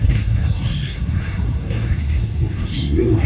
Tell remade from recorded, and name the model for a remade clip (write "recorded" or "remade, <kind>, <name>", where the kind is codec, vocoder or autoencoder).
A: remade, codec, SNAC